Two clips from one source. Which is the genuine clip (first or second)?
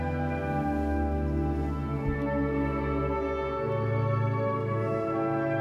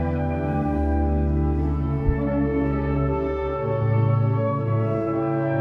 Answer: first